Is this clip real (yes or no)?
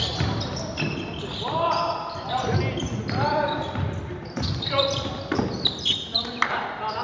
yes